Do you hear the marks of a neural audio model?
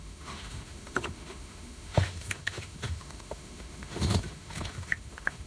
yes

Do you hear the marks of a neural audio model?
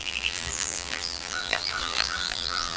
yes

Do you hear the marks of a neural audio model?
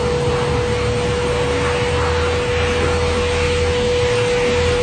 no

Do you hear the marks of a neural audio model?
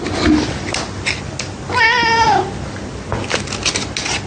no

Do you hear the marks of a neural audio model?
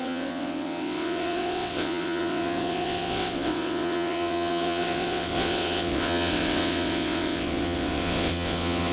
yes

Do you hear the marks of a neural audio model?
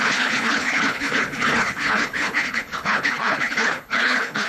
yes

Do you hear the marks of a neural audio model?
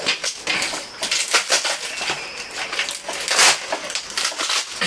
no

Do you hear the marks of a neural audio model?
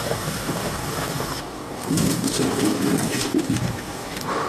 yes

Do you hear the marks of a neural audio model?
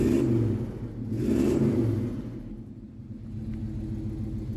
no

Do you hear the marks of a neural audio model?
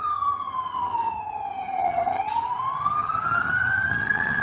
yes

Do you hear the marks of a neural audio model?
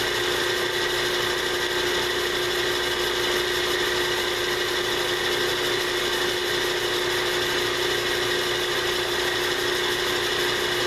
no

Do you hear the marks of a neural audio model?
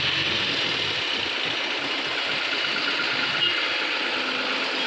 no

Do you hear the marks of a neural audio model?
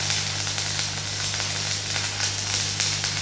no